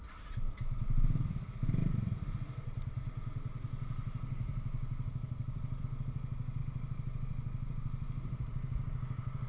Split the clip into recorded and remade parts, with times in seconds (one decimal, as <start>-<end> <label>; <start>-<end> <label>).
0.0-1.8 recorded; 1.8-5.8 remade; 5.8-6.6 recorded; 6.6-9.5 remade